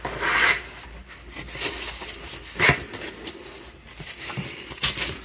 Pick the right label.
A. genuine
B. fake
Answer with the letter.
A